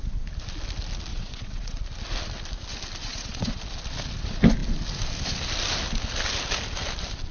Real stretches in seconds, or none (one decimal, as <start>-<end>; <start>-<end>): 0.0-1.1; 1.8-3.0; 3.6-7.3